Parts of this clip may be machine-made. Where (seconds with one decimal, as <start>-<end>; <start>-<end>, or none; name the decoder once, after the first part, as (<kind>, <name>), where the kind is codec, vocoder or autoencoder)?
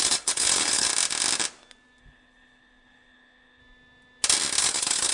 0.0-0.9 (codec, HILCodec); 2.0-3.6; 4.6-5.1